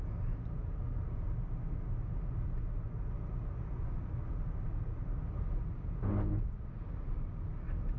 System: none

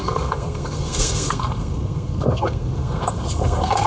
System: codec, SNAC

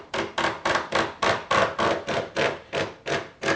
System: none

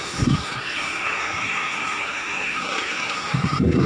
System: codec, SNAC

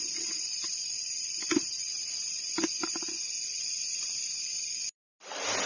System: none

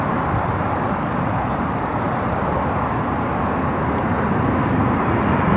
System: none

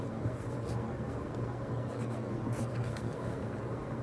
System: codec, SNAC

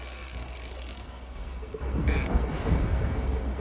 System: codec, SNAC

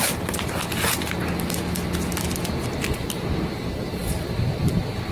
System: none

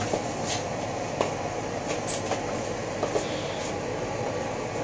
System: none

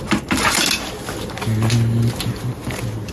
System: none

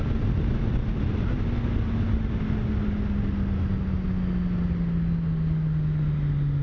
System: none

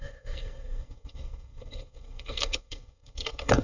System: codec, SNAC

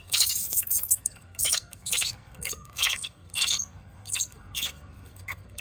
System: codec, SNAC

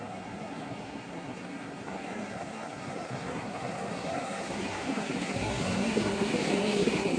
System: codec, SNAC